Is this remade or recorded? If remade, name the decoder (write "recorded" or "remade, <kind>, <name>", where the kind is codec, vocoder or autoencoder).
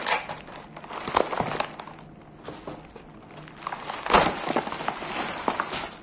recorded